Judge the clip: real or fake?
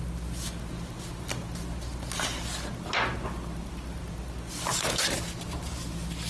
real